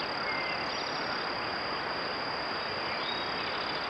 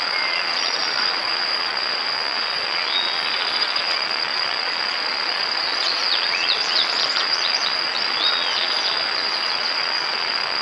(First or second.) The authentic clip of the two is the first